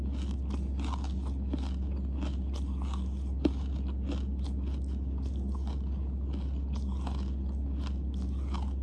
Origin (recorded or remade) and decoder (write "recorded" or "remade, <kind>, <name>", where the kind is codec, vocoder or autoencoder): recorded